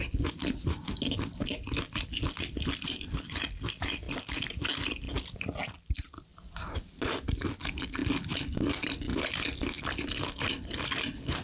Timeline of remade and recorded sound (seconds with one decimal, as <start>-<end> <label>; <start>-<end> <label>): 0.0-6.3 recorded; 6.3-6.9 remade; 6.9-8.0 recorded; 8.0-8.9 remade; 8.9-11.4 recorded